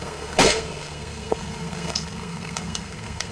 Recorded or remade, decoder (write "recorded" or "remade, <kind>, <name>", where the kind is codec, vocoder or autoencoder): remade, codec, SNAC